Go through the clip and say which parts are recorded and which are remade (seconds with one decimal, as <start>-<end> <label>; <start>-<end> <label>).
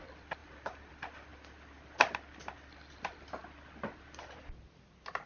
0.0-0.4 recorded; 0.4-0.9 remade; 0.9-5.3 recorded